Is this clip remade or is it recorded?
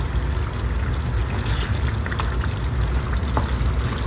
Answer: recorded